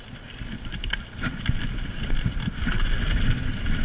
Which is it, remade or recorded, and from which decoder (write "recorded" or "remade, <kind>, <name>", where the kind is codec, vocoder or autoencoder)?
recorded